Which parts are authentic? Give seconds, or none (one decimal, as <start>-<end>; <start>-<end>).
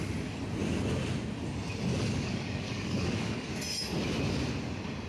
0.0-1.9; 3.5-5.1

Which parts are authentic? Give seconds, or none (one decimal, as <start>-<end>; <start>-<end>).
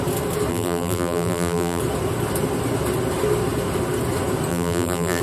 0.0-0.5; 1.8-4.5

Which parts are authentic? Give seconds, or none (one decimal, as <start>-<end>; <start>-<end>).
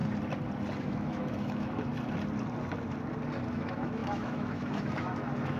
0.0-0.8; 1.9-3.5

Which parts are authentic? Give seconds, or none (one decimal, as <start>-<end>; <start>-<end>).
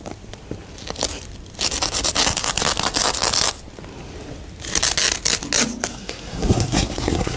0.0-5.9